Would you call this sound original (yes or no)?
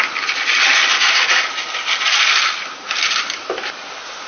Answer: yes